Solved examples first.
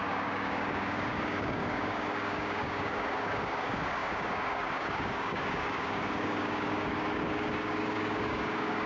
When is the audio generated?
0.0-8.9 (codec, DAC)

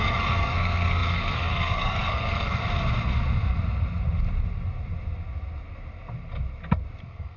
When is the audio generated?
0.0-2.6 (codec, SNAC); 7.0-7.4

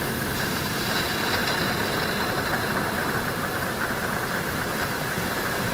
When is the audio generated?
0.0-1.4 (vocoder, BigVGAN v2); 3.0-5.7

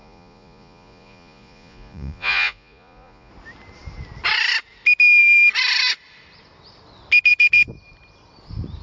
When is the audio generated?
0.0-3.3 (vocoder, Vocos)

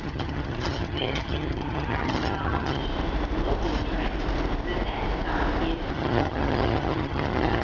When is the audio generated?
0.0-2.8 (vocoder, HiFi-GAN); 5.9-7.6

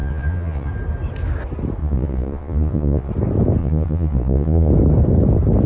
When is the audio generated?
0.0-0.7 (vocoder, Vocos); 1.8-3.1; 3.6-4.7

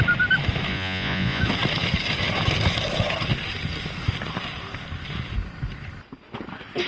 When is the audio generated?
0.7-1.4 (vocoder, Vocos)

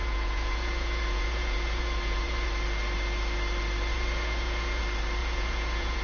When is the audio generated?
0.0-2.5 (vocoder, Vocos); 3.9-4.8; 5.2-6.0